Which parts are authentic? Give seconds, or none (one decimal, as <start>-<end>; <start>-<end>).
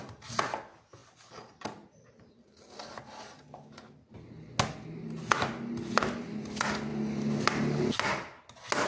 0.0-8.9